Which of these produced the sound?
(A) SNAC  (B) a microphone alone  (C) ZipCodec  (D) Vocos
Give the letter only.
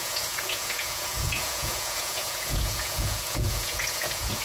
D